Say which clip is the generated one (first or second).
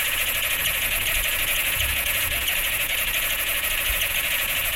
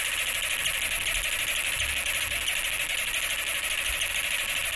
first